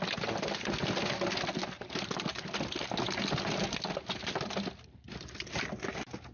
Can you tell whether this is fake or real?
real